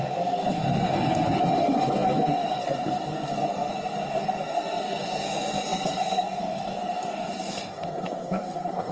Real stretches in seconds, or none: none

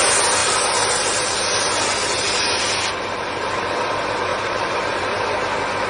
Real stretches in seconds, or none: 0.0-0.4; 3.9-4.3; 5.2-5.9

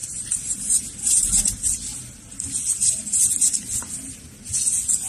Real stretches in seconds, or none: 2.2-5.1